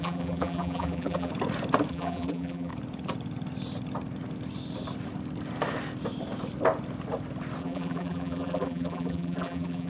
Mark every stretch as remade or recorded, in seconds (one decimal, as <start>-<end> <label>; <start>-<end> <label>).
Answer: 0.0-1.3 remade; 1.3-1.9 recorded; 1.9-2.7 remade; 2.7-7.6 recorded; 7.6-9.9 remade

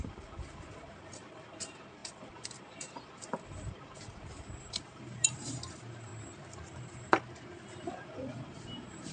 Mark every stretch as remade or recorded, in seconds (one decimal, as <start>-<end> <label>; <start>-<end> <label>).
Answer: 0.0-6.1 remade; 6.1-6.6 recorded; 6.6-9.1 remade

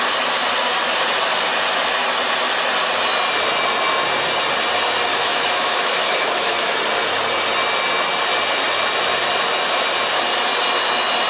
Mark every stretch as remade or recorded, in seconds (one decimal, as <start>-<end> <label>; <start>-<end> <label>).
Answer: 0.0-5.1 recorded; 5.1-6.7 remade; 6.7-11.3 recorded

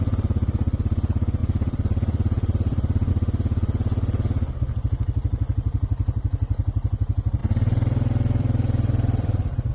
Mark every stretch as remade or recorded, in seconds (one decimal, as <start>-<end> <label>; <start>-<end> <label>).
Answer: 0.0-1.4 recorded; 1.4-3.1 remade; 3.1-7.4 recorded; 7.4-9.7 remade

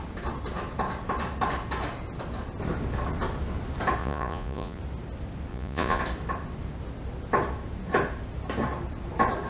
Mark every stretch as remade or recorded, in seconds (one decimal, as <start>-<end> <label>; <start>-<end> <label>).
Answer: 0.0-4.0 recorded; 4.0-4.8 remade; 4.8-5.5 recorded; 5.5-6.0 remade; 6.0-9.5 recorded

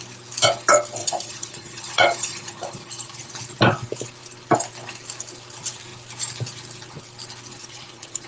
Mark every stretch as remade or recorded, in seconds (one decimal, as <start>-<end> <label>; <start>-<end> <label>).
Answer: 0.0-1.0 recorded; 1.0-3.4 remade; 3.4-7.5 recorded; 7.5-8.3 remade

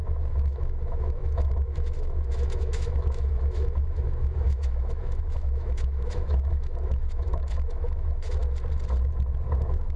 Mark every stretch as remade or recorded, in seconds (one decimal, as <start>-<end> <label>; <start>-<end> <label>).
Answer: 0.0-8.4 remade; 8.4-9.6 recorded; 9.6-10.0 remade